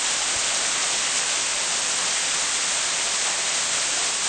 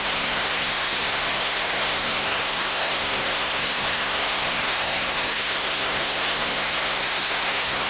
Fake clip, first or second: second